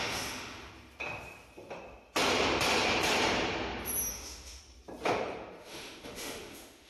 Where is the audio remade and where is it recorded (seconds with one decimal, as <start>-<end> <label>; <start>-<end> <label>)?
0.0-0.7 remade; 0.7-4.1 recorded; 4.1-4.6 remade; 4.6-5.6 recorded; 5.6-6.9 remade